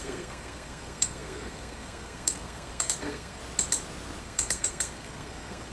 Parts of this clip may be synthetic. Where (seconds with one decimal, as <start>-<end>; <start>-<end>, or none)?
0.0-3.4; 4.2-5.7